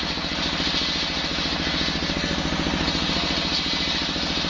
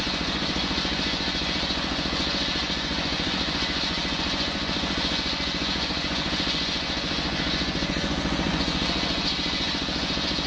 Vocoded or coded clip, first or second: second